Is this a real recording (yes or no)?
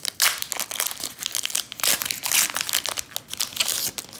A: yes